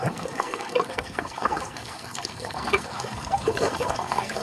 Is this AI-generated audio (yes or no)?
yes